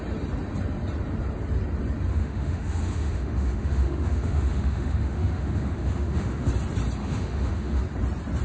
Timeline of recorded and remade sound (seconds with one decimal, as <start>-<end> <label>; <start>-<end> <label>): 0.0-2.1 recorded; 2.1-6.5 remade; 6.5-7.0 recorded; 7.0-7.8 remade; 7.8-8.4 recorded